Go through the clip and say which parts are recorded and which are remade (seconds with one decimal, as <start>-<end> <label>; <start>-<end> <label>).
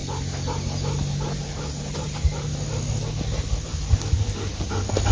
0.0-5.1 recorded